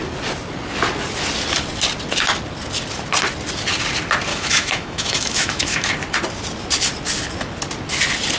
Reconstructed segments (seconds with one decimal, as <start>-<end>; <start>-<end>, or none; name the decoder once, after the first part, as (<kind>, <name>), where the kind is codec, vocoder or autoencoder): 4.3-5.9 (autoencoder, DAC-VAE)